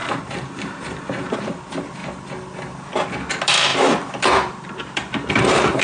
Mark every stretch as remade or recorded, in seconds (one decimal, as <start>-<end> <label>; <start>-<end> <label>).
0.0-2.0 remade; 2.0-3.3 recorded; 3.3-3.7 remade; 3.7-5.3 recorded; 5.3-5.8 remade